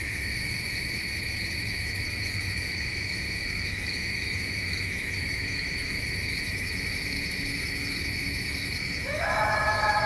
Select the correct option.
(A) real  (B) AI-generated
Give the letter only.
B